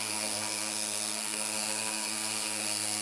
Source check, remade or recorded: remade